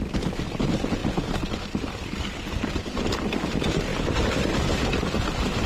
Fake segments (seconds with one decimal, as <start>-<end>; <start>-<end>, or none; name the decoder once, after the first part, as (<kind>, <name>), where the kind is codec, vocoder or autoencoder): 3.9-4.7 (vocoder, BigVGAN v2)